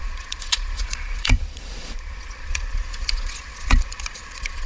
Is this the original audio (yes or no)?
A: no